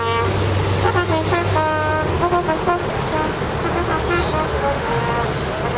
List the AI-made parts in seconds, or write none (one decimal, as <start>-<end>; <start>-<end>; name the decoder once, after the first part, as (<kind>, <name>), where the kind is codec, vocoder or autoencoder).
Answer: 4.5-5.0 (autoencoder, DAC-VAE)